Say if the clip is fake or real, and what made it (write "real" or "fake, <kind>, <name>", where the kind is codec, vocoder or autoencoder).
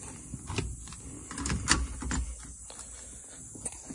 real